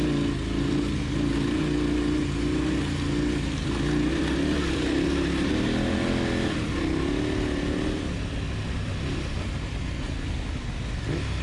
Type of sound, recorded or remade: recorded